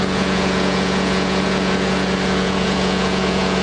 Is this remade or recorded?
remade